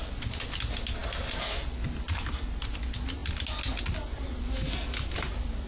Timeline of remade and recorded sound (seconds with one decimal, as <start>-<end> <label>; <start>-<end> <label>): 0.0-5.7 recorded